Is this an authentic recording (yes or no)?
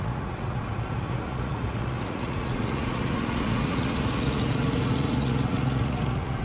no